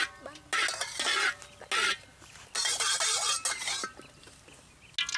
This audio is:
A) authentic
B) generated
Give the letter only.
A